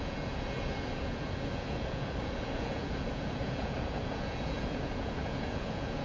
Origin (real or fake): fake